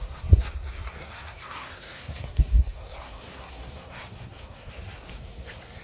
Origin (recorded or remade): remade